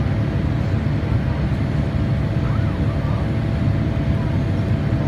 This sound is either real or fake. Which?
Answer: real